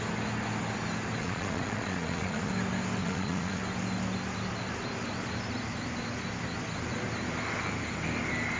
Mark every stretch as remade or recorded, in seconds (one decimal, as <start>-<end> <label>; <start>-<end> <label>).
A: 0.0-1.2 recorded; 1.2-2.5 remade; 2.5-3.0 recorded; 3.0-3.6 remade; 3.6-8.6 recorded